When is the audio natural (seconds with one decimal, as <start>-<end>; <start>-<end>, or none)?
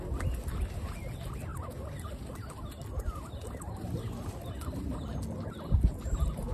0.0-6.5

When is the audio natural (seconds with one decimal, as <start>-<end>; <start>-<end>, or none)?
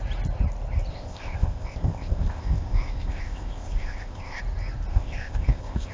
0.0-0.9; 4.4-4.9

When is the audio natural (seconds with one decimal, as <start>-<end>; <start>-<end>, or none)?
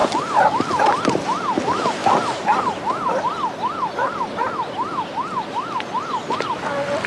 0.0-7.1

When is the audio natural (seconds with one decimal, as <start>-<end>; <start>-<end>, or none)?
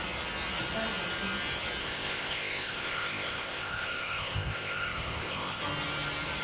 0.0-1.8; 5.6-6.4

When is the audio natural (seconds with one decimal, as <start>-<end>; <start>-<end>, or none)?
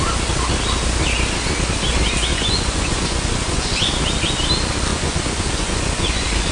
0.0-2.3; 3.9-4.9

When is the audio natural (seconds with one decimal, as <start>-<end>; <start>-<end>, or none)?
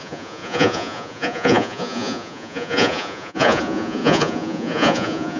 none